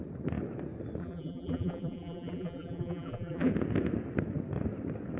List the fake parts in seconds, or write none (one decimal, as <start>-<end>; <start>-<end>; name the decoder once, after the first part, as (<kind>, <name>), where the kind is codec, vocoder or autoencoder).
1.0-3.5 (vocoder, BigVGAN v2)